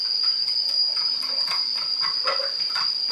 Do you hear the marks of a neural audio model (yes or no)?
no